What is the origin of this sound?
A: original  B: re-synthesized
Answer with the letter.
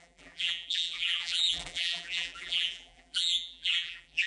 B